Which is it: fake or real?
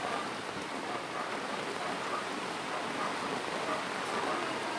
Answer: real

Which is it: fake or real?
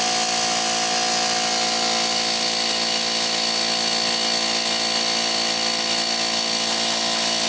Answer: real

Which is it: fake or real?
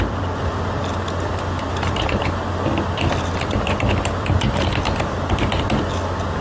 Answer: fake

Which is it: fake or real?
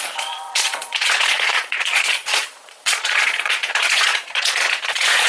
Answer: fake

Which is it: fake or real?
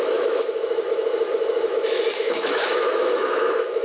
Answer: fake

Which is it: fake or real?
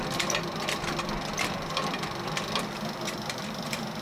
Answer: fake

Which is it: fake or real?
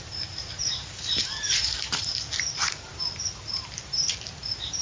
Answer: fake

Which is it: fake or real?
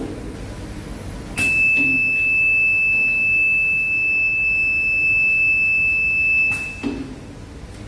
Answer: real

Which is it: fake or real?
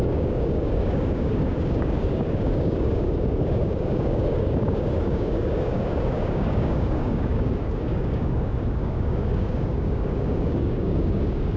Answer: fake